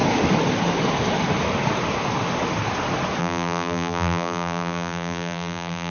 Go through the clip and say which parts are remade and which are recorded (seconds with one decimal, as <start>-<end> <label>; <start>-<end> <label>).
0.0-3.2 recorded; 3.2-5.9 remade